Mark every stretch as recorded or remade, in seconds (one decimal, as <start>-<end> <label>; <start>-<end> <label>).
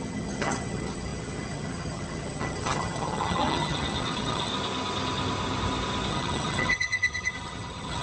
0.0-4.5 remade; 4.5-6.1 recorded; 6.1-8.0 remade